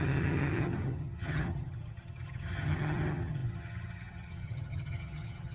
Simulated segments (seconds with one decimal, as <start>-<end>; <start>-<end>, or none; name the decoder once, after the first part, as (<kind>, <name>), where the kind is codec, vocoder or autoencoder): 0.0-5.5 (vocoder, HiFi-GAN)